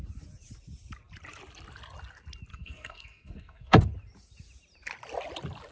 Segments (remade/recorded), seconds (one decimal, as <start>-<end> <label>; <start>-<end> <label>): 0.0-2.5 recorded; 2.5-3.8 remade; 3.8-5.7 recorded